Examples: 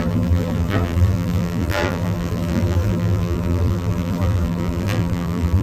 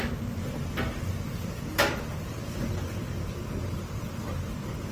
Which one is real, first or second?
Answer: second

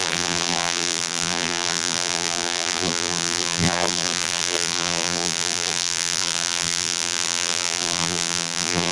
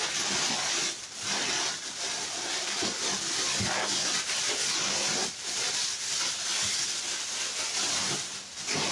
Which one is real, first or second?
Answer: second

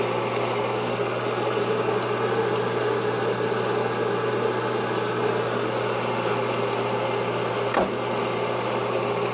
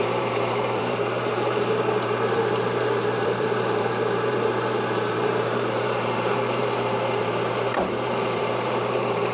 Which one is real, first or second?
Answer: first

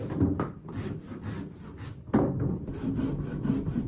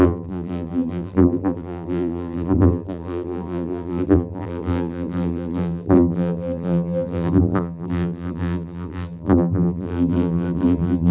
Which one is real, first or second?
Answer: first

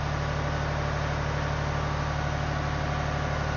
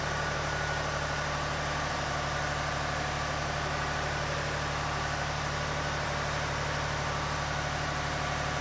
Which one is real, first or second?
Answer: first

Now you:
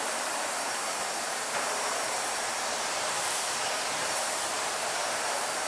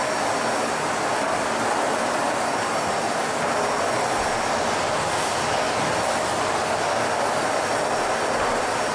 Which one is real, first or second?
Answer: second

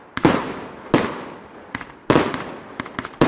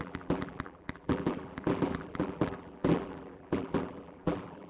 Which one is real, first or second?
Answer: first